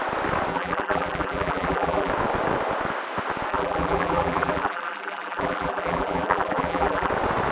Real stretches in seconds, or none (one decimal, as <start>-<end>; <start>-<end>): 0.0-0.5; 2.1-3.5; 7.1-7.5